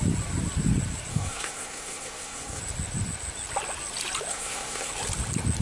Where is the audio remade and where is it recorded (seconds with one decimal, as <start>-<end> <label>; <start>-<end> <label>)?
0.0-1.1 recorded; 1.1-2.6 remade; 2.6-4.3 recorded; 4.3-4.9 remade; 4.9-5.6 recorded